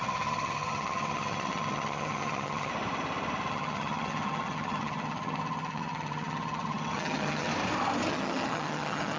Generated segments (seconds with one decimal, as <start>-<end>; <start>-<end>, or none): 0.0-2.7; 3.5-7.5; 8.1-9.2